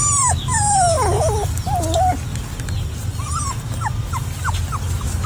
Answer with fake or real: real